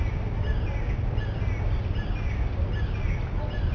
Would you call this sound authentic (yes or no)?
yes